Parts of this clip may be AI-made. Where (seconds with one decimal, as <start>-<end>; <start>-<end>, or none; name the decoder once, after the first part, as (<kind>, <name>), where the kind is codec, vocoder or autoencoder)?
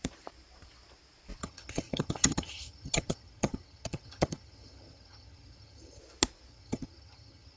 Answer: 1.4-6.0 (vocoder, HiFi-GAN); 6.5-7.6